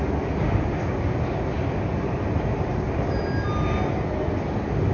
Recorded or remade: recorded